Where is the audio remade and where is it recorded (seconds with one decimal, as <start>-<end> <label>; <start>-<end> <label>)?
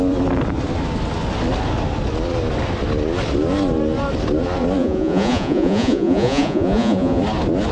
0.0-4.8 recorded; 4.8-7.2 remade; 7.2-7.7 recorded